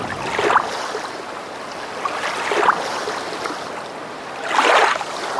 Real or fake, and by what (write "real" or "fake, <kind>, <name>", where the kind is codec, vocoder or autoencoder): real